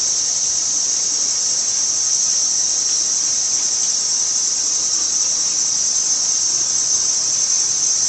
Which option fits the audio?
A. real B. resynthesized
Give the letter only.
A